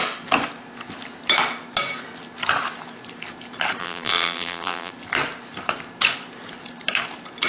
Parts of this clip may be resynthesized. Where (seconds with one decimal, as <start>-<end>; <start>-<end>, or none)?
3.8-4.9